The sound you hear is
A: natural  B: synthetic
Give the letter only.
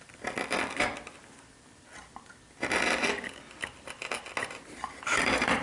A